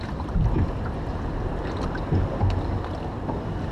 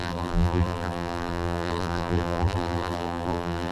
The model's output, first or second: second